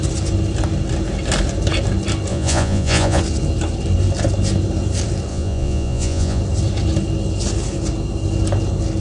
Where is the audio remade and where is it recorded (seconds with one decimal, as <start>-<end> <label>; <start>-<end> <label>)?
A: 0.0-2.3 recorded; 2.3-3.2 remade; 3.2-5.3 recorded; 5.3-6.4 remade; 6.4-9.0 recorded